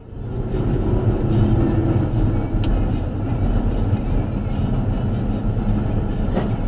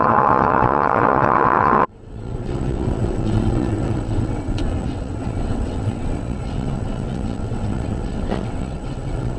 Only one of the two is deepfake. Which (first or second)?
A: second